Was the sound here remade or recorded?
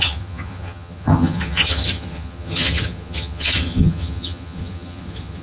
remade